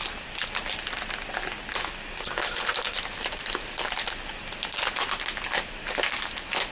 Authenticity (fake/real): real